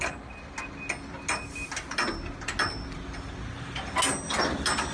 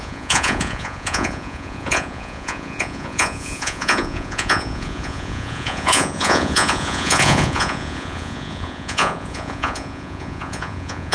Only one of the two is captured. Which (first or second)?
first